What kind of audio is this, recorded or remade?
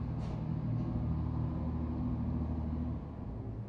recorded